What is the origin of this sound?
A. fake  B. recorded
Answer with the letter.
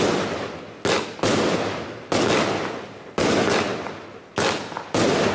B